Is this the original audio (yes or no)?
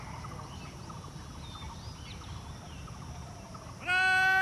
yes